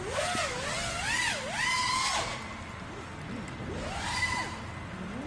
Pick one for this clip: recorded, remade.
recorded